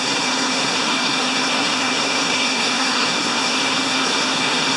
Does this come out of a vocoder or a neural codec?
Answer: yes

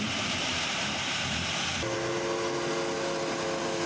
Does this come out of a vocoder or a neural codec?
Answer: no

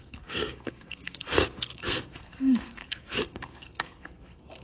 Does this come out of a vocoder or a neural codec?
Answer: yes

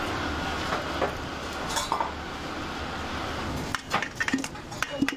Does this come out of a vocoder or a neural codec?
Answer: no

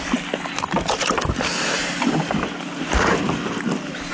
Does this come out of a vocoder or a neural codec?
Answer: no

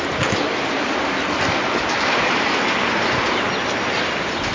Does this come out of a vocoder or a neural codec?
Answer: no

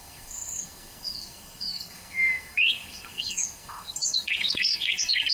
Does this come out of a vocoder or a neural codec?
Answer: yes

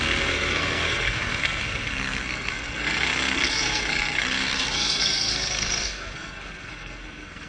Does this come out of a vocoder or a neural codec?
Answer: yes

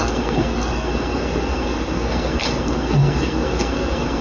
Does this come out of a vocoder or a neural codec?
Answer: yes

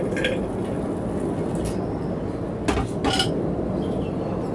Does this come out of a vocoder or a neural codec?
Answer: no